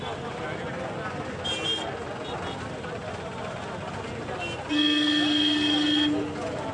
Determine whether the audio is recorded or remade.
recorded